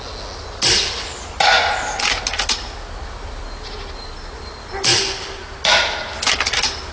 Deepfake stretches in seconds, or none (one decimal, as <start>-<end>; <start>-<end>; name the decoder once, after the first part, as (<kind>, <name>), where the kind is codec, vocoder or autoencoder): none